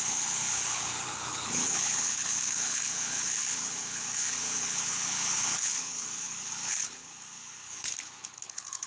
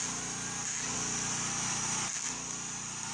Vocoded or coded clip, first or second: first